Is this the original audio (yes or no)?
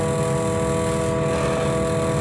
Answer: yes